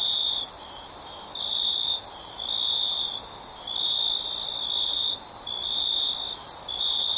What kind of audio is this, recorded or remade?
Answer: recorded